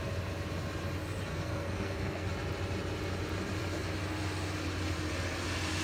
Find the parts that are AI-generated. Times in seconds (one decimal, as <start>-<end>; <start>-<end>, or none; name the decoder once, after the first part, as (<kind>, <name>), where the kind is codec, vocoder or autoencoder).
1.3-2.3 (codec, SNAC)